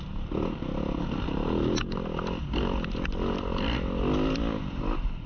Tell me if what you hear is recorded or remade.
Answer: recorded